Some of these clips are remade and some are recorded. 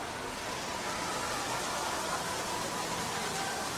recorded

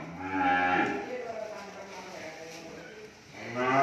recorded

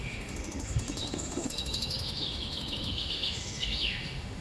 remade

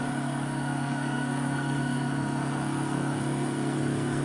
remade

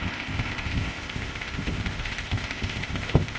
remade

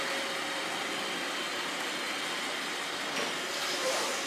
recorded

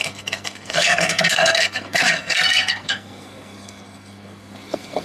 remade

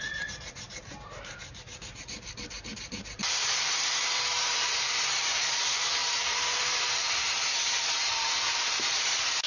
remade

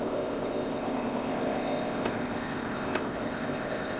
remade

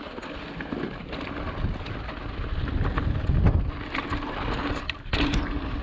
recorded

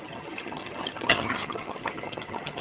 remade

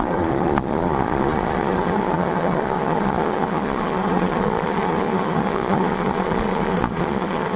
remade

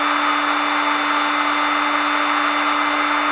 recorded